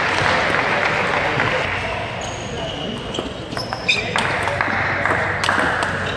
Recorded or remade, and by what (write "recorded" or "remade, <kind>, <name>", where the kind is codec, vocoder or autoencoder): recorded